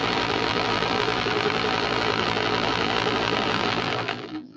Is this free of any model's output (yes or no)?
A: no